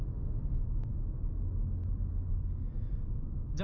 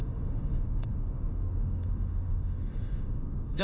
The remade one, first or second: second